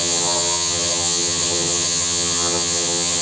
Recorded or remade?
remade